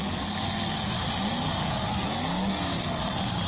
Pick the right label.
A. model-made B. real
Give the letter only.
B